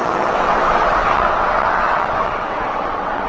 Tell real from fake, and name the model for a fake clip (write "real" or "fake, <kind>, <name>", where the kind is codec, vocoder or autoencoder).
fake, vocoder, WaveNeXt